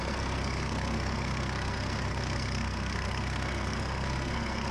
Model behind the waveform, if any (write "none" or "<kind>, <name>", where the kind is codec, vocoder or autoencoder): codec, SNAC